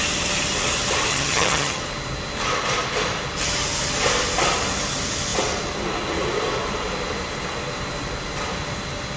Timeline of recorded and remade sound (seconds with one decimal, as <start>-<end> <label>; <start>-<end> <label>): 0.0-1.1 recorded; 1.1-1.8 remade; 1.8-9.2 recorded